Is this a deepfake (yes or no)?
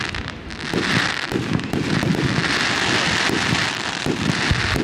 yes